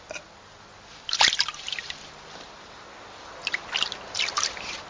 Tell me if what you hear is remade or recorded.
recorded